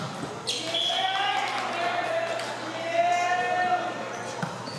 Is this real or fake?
real